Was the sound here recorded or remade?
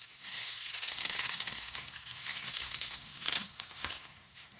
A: remade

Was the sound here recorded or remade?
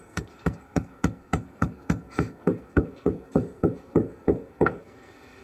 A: remade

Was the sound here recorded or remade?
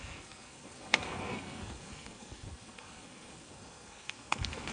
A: remade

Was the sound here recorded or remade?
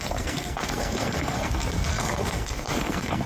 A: remade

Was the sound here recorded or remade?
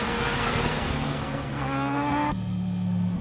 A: remade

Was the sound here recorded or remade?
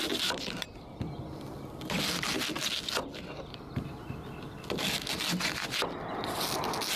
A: recorded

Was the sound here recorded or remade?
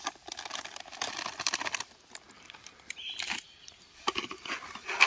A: recorded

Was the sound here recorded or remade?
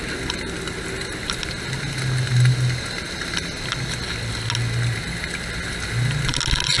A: recorded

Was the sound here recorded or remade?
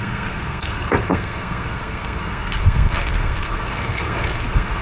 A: remade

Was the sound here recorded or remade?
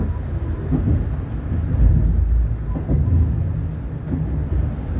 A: recorded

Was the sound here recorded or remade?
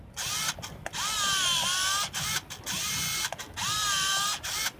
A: recorded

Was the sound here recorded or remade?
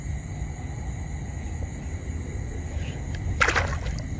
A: recorded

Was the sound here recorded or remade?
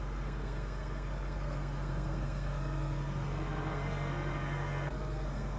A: remade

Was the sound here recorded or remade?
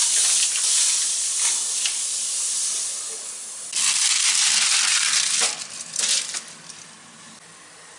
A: recorded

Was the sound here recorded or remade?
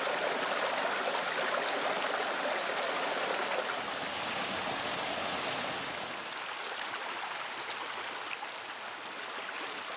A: recorded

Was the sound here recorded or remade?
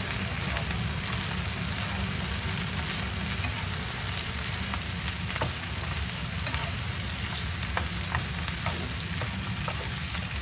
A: recorded